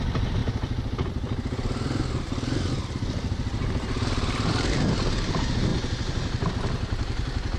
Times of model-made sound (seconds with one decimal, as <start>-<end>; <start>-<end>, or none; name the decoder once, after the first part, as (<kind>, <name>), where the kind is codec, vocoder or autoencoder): 0.0-7.6 (vocoder, BigVGAN v2)